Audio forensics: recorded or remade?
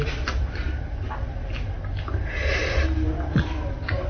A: recorded